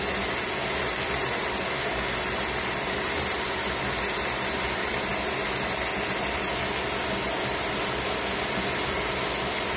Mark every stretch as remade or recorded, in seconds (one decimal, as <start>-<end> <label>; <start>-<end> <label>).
0.0-9.8 recorded

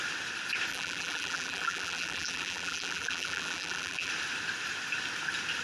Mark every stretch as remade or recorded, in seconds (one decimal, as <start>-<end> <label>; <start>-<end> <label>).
0.0-0.7 recorded; 0.7-4.1 remade; 4.1-5.6 recorded

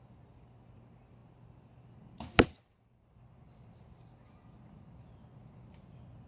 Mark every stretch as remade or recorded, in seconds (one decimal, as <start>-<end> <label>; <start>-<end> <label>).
0.0-6.3 recorded

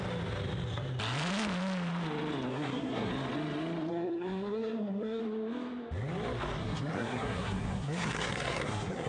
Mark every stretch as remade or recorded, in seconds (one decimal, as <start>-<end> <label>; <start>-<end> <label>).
0.0-2.5 recorded; 2.5-3.1 remade; 3.1-3.9 recorded; 3.9-5.2 remade; 5.2-6.6 recorded; 6.6-9.1 remade

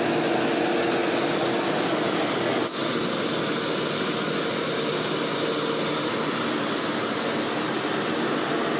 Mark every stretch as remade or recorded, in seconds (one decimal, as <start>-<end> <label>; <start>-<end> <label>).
0.0-8.8 recorded

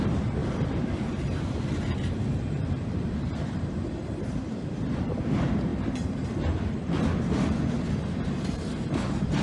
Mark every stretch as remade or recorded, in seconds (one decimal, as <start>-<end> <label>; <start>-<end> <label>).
0.0-0.4 recorded; 0.4-3.9 remade; 3.9-9.4 recorded

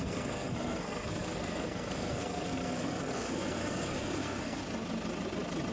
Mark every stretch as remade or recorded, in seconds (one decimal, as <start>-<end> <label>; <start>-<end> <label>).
0.0-4.6 remade; 4.6-5.7 recorded